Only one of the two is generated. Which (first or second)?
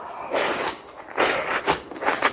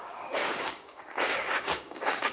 second